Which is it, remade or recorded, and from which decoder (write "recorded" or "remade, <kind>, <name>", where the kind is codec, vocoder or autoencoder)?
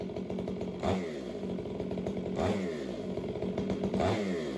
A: recorded